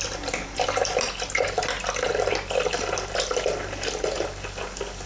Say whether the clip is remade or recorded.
recorded